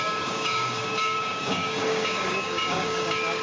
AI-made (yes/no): yes